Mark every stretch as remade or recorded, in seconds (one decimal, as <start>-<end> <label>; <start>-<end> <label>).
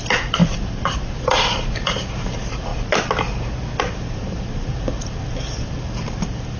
0.0-2.7 remade; 2.7-3.8 recorded; 3.8-6.6 remade